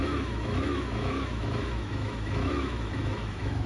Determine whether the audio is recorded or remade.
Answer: remade